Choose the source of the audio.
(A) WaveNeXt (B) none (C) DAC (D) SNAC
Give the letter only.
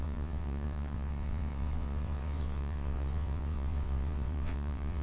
A